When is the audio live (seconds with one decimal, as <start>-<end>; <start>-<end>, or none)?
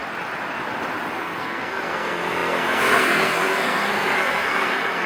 0.0-1.2